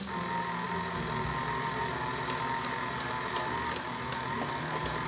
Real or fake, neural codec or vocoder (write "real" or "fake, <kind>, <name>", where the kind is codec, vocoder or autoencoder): real